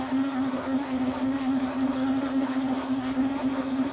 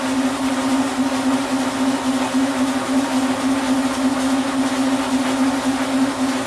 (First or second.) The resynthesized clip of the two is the first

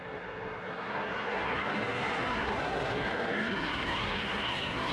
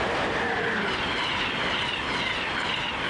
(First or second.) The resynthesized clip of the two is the first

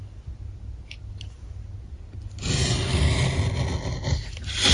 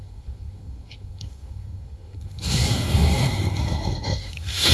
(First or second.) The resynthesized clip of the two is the second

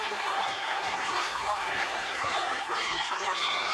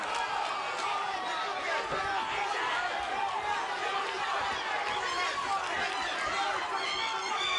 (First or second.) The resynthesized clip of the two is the first